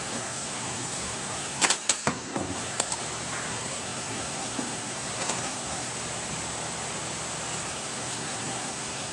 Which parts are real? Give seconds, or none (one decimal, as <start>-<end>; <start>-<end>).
2.9-3.5; 5.9-7.6

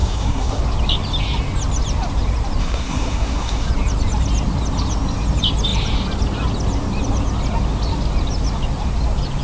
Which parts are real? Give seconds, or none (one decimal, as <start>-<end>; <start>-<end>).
0.6-2.6; 3.7-9.4

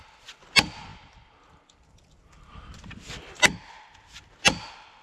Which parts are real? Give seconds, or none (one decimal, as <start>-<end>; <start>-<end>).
0.0-5.0

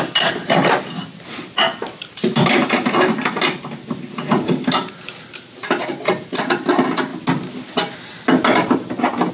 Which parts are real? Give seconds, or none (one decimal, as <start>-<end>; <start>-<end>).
0.0-9.3